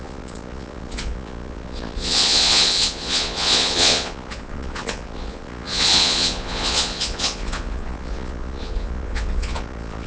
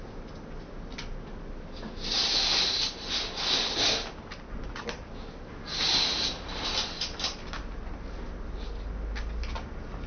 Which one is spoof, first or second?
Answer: first